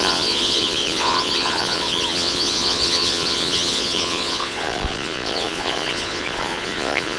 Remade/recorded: remade